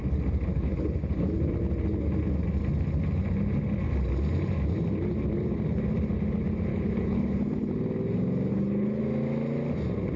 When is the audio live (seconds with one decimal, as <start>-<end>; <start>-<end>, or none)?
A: 0.0-0.5; 1.5-6.7; 7.7-8.5; 9.0-10.2

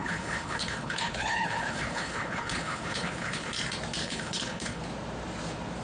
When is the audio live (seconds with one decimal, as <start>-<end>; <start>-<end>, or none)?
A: 3.5-4.0; 4.8-5.8

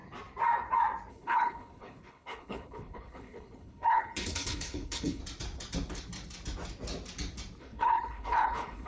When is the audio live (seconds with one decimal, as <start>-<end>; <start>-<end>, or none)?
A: 0.0-1.1; 5.2-7.6

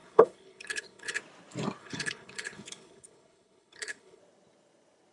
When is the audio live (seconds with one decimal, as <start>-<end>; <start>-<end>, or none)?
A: 1.2-1.8; 4.2-5.1

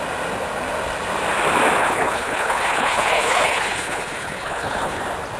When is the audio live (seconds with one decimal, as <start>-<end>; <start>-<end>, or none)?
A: 0.0-1.8; 5.0-5.4

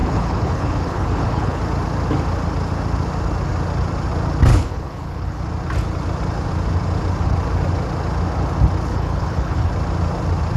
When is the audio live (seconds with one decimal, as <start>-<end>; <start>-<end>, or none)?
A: 1.6-4.5; 5.4-8.9; 9.7-10.6

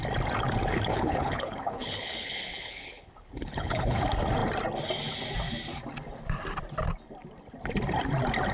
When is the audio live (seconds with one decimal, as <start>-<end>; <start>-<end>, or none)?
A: 0.0-0.9; 4.0-8.5